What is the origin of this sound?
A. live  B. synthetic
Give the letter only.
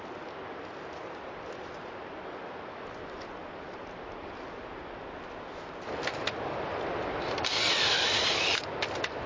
A